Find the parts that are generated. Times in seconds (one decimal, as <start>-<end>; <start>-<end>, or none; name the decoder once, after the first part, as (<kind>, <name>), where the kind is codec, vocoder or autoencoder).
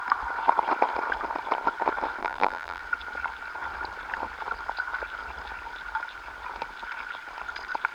2.2-2.8 (vocoder, BigVGAN v2)